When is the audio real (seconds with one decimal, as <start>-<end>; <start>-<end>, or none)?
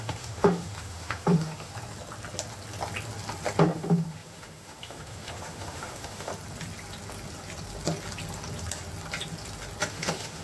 1.7-3.6; 6.3-9.9